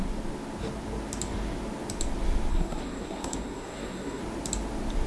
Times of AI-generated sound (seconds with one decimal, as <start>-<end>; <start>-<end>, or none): 2.5-4.2